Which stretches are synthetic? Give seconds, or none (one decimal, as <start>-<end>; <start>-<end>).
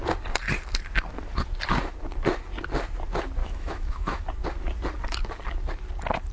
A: 3.4-4.2